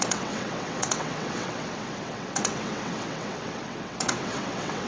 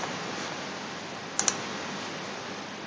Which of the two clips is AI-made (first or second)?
first